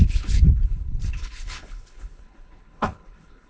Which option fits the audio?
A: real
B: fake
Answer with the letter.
B